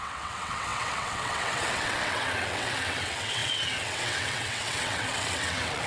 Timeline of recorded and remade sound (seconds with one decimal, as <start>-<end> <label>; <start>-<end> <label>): 0.0-5.9 remade